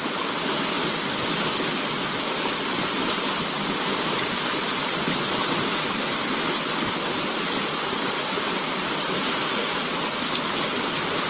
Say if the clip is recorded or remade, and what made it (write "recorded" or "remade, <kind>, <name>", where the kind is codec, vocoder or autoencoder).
recorded